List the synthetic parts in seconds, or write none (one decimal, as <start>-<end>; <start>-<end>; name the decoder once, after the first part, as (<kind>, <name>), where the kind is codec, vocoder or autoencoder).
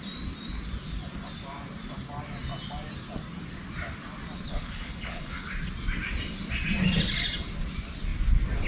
4.5-5.5 (codec, HILCodec)